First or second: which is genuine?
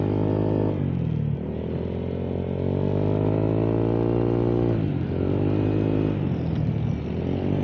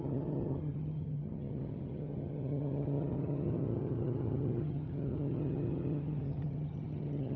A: first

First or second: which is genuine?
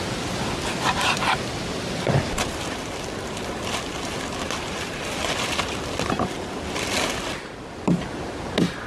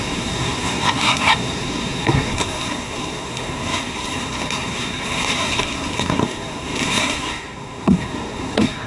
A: first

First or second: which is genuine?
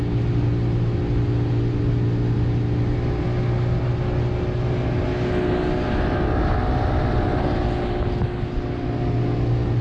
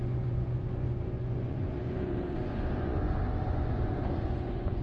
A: first